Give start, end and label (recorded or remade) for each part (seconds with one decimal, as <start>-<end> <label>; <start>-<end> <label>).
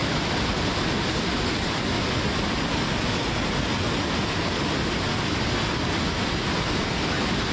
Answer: 0.0-7.5 recorded